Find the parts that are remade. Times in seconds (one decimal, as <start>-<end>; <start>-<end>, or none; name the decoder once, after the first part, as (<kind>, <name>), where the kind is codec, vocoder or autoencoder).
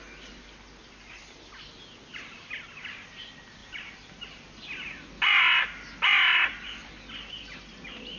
none